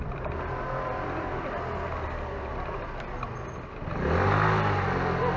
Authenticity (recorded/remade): recorded